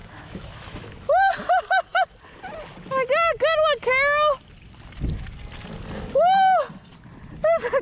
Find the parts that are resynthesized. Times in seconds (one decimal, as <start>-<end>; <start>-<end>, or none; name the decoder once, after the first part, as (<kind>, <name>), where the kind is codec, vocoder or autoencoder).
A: 0.0-1.3 (autoencoder, DAC-VAE)